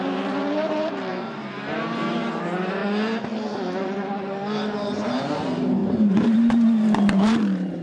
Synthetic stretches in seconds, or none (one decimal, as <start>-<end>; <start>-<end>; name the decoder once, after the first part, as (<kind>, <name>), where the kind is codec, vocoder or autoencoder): 0.0-2.8 (vocoder, BigVGAN v2); 3.8-7.8